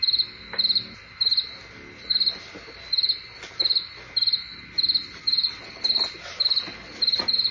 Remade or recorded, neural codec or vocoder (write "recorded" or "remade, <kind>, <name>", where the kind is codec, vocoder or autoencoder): recorded